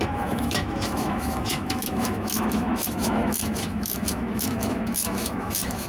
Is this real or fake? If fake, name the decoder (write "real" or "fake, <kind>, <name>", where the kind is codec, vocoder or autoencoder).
fake, autoencoder, DAC-VAE